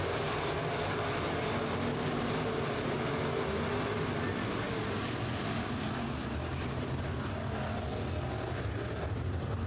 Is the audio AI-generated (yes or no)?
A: no